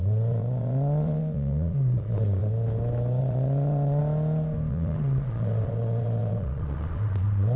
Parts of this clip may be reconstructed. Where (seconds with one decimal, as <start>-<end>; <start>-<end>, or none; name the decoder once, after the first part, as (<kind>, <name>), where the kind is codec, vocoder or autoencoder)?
0.0-2.4 (vocoder, Vocos); 3.2-4.0; 4.7-7.6